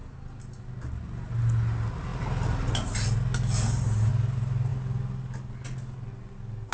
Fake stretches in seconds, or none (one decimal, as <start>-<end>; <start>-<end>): none